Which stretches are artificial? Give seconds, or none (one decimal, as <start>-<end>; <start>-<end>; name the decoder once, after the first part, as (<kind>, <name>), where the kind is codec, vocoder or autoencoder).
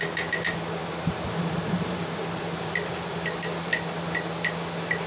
none